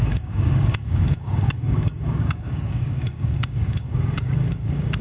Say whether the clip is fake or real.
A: fake